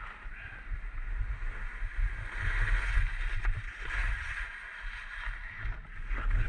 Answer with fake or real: real